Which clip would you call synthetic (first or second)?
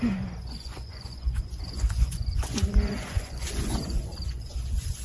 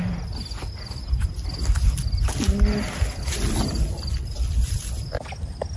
first